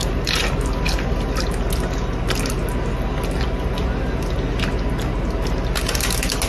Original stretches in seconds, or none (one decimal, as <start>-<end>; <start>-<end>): 0.0-6.5